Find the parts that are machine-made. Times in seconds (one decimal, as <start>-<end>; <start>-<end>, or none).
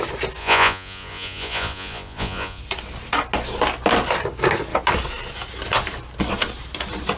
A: 0.4-2.6